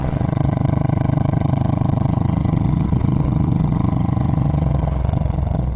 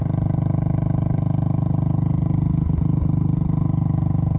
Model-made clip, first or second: first